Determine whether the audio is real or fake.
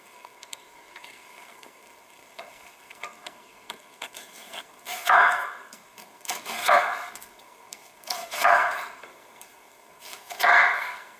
fake